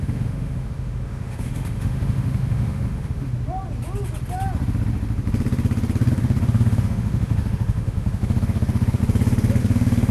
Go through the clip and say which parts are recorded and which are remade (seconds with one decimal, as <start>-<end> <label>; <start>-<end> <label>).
0.0-3.3 remade; 3.3-6.1 recorded; 6.1-9.0 remade; 9.0-9.6 recorded; 9.6-10.1 remade